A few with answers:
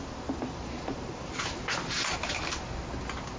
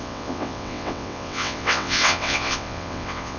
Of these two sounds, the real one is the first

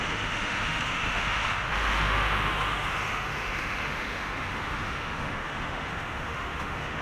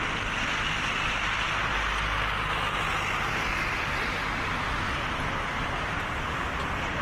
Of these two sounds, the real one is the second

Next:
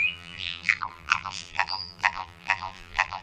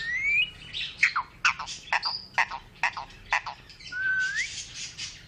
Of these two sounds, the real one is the second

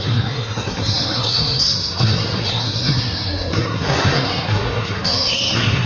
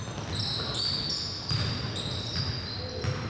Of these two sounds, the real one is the second